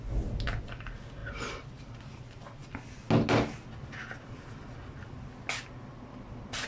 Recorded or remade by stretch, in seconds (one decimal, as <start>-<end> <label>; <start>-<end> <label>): 0.0-6.7 recorded